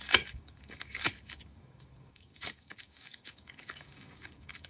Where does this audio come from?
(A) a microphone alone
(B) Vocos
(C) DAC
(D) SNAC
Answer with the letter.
C